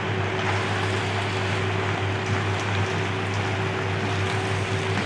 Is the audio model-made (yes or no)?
no